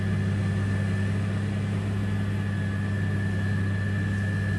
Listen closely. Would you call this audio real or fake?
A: real